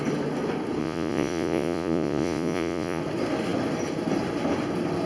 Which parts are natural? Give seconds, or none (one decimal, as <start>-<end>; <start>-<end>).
0.0-0.8; 3.0-5.1